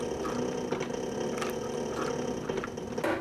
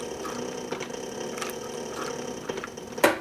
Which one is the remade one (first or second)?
second